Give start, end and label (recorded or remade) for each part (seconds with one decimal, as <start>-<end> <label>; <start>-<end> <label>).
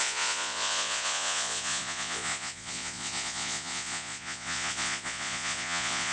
0.0-6.1 remade